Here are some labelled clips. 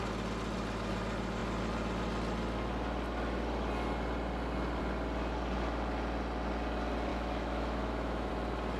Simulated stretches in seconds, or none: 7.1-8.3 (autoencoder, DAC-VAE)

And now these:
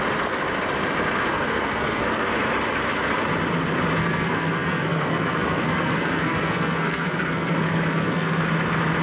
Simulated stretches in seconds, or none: 1.3-2.3 (codec, SNAC); 4.0-8.4